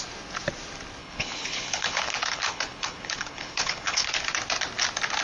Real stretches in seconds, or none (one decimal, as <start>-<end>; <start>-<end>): 0.0-1.0; 4.1-5.2